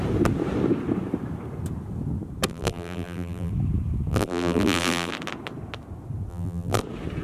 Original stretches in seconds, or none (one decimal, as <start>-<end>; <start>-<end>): 0.0-2.5; 3.5-4.1; 5.1-6.3; 6.8-7.2